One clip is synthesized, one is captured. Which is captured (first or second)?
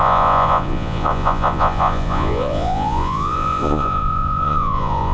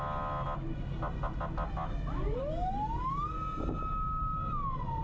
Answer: second